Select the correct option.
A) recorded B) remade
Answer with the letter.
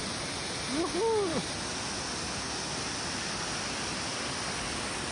A